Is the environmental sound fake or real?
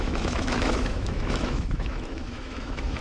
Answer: fake